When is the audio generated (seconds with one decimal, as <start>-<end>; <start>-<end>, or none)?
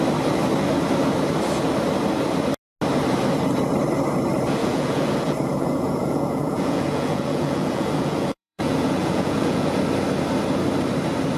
4.6-9.8